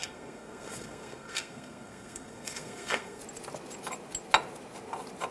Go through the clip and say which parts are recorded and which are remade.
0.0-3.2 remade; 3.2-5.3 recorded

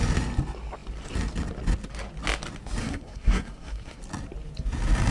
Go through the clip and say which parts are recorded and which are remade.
0.0-2.8 recorded; 2.8-4.0 remade; 4.0-5.1 recorded